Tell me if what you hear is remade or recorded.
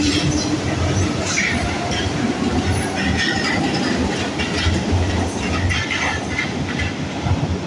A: recorded